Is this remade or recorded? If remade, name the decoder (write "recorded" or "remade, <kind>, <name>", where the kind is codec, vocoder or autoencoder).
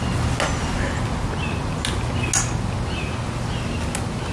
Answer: recorded